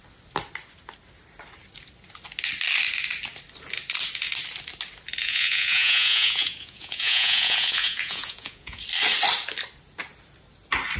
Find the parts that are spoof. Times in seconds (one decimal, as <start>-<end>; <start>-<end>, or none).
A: 5.2-8.8